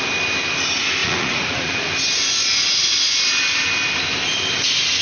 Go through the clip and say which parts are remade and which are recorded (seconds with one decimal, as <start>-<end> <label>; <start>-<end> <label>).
0.0-1.0 recorded; 1.0-1.8 remade; 1.8-5.0 recorded